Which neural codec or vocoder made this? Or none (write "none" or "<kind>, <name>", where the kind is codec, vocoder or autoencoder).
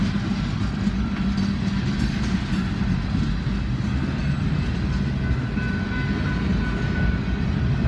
none